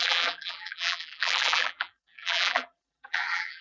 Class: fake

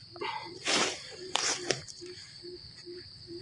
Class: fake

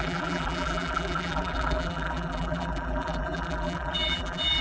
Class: fake